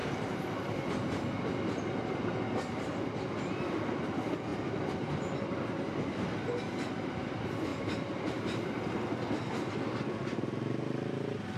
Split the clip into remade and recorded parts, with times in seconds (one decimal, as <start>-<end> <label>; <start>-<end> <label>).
0.0-1.4 remade; 1.4-7.7 recorded; 7.7-8.6 remade; 8.6-11.6 recorded